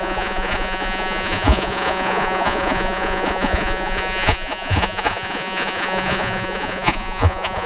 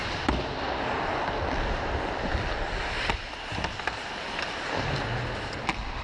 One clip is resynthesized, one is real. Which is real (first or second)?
second